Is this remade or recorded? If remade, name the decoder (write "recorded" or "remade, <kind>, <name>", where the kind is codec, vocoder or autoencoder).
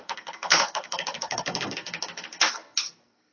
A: remade, codec, SNAC